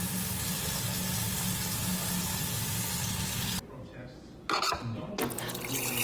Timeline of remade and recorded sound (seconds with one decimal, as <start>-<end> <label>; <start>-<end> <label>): 0.0-6.0 recorded